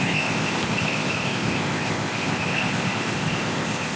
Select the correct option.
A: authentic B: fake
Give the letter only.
B